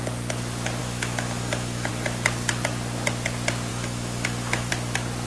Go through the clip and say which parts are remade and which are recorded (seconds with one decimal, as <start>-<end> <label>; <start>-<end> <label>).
0.0-0.8 recorded; 0.8-1.9 remade; 1.9-3.7 recorded; 3.7-4.7 remade; 4.7-5.3 recorded